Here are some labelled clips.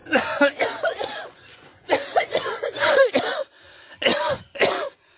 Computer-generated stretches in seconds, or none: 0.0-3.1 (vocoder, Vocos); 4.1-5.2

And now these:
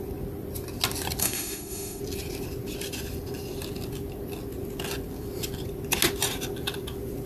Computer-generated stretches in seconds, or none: 1.2-2.0 (autoencoder, DAC-VAE)